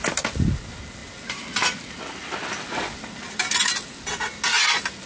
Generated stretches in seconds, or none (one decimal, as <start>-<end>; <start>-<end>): none